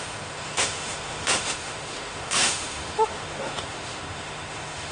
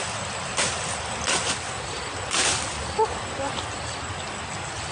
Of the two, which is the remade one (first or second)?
first